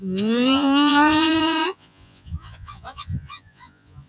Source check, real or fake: fake